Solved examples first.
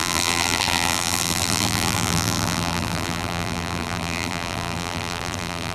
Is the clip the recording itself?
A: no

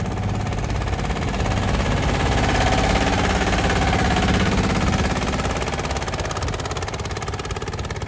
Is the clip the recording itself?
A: yes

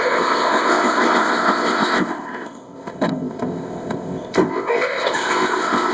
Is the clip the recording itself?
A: no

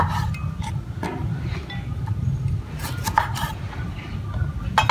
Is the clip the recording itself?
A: yes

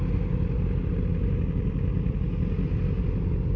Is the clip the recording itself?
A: yes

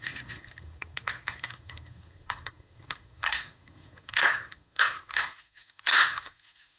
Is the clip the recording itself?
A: no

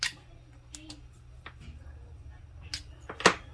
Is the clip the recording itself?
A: yes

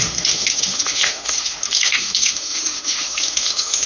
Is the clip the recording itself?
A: no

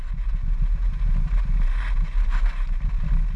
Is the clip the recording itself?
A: yes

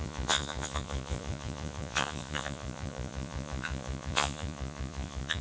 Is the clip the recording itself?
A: no